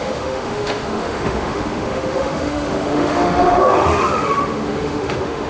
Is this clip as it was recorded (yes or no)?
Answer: no